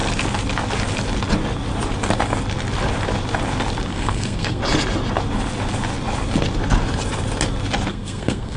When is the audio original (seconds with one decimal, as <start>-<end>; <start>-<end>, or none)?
0.0-3.9; 4.6-7.9

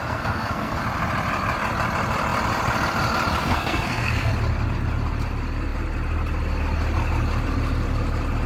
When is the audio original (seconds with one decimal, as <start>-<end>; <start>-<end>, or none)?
0.8-3.4; 4.3-8.5

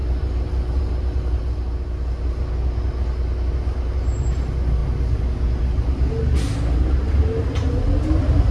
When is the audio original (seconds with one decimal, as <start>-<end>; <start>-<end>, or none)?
0.0-8.5

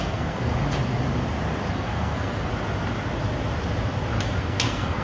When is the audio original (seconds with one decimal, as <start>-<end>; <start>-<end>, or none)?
0.5-1.7; 2.5-4.4

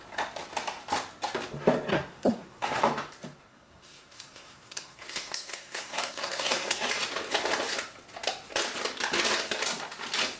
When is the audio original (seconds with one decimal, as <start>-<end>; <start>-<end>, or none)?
0.0-1.9; 2.8-3.5; 6.9-10.4

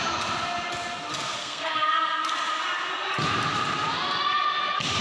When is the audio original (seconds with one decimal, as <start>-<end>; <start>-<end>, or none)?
0.0-1.4; 2.3-5.0